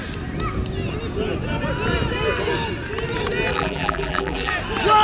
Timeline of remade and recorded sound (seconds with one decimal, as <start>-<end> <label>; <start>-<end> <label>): 0.0-3.5 recorded; 3.5-4.5 remade; 4.5-5.0 recorded